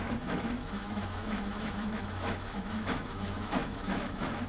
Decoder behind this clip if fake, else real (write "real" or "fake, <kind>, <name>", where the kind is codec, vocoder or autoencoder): fake, autoencoder, DAC-VAE